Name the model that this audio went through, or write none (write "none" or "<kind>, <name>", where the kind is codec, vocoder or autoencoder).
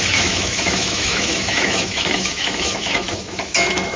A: autoencoder, DAC-VAE